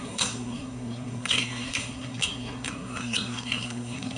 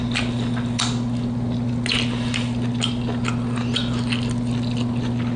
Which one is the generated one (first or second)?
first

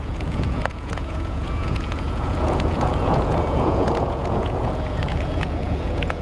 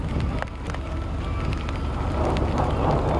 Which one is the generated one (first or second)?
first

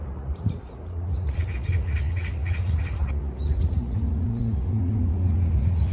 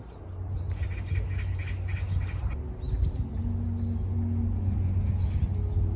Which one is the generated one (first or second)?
first